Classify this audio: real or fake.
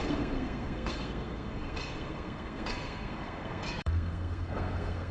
fake